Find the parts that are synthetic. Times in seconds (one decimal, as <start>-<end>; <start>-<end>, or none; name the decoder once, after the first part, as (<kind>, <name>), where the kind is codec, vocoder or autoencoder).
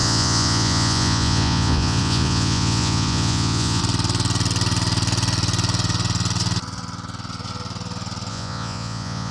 0.0-3.8 (vocoder, Vocos); 8.3-9.3